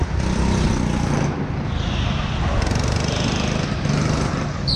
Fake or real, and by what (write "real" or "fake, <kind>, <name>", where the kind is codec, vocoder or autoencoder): real